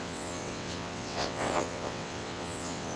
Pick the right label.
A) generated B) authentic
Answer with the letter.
A